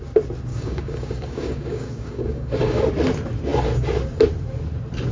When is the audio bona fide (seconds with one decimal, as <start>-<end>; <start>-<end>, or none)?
0.0-0.5; 2.8-5.1